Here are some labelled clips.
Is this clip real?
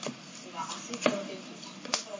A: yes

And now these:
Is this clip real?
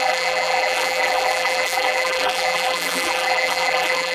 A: no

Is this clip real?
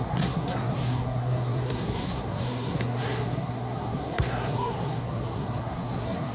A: no